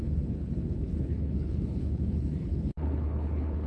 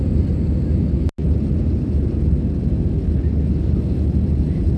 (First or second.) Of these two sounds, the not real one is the first